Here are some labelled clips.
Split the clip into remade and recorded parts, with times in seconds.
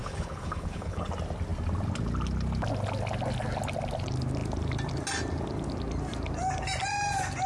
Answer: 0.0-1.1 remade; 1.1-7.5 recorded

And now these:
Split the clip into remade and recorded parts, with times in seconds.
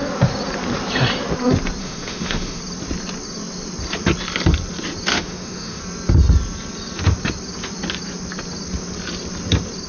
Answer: 0.0-1.8 recorded; 1.8-2.6 remade; 2.6-5.1 recorded; 5.1-5.8 remade; 5.8-9.9 recorded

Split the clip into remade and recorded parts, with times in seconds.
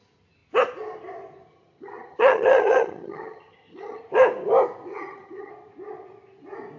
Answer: 0.0-1.5 recorded; 1.5-4.0 remade; 4.0-4.9 recorded; 4.9-5.5 remade; 5.5-6.8 recorded